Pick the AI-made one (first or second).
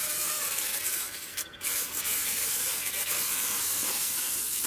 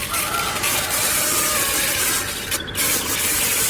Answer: first